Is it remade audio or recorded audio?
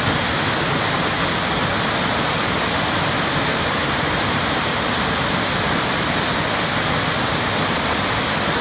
recorded